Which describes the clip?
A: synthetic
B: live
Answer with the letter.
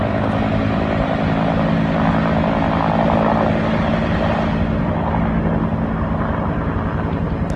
B